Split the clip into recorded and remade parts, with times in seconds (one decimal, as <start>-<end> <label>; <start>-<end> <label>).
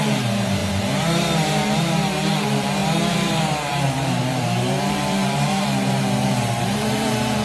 0.0-7.4 remade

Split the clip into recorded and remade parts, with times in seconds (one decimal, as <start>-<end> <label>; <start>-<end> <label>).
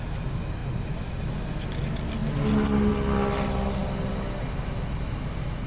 0.0-5.7 recorded